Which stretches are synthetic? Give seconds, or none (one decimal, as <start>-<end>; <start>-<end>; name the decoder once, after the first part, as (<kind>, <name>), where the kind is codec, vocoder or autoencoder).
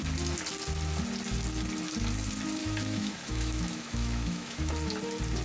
2.6-4.7 (autoencoder, DAC-VAE)